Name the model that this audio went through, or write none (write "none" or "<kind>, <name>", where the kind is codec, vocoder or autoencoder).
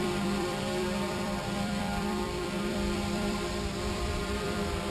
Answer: vocoder, BigVGAN v2